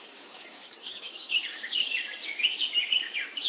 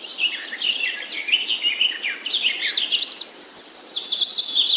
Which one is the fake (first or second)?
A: first